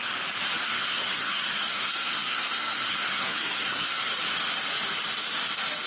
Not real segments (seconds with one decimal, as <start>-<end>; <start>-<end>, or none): 0.6-4.1